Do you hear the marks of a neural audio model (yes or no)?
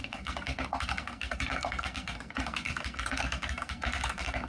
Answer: yes